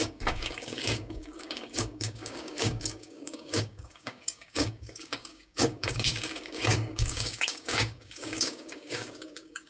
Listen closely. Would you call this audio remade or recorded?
remade